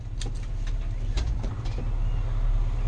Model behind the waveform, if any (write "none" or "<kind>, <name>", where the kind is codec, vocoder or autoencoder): none